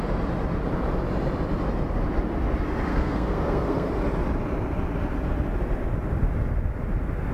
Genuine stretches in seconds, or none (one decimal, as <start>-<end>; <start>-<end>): 0.0-2.9; 3.9-7.3